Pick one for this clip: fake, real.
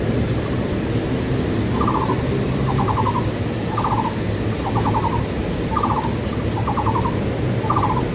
real